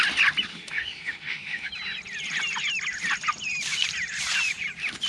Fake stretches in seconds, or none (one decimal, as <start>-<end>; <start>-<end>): 0.5-1.7